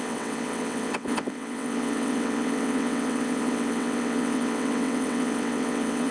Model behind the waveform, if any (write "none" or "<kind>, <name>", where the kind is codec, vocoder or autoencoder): vocoder, WaveNeXt